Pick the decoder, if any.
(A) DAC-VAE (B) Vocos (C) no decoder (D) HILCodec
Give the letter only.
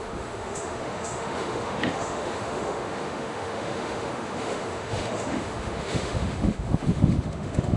A